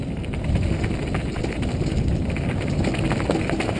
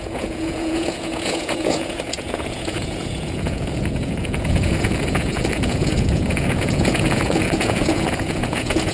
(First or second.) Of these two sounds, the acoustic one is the first